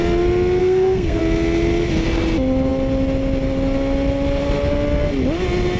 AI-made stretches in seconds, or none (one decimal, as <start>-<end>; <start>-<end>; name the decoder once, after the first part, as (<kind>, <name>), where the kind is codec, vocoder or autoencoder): 0.6-1.2 (codec, SNAC)